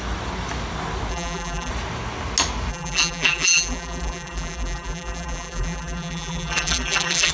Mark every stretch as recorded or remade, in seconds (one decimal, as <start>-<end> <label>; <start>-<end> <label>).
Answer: 0.0-1.1 recorded; 1.1-1.7 remade; 1.7-2.7 recorded; 2.7-7.3 remade